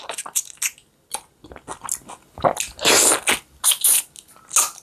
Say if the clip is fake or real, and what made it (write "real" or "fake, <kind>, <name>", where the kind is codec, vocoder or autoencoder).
real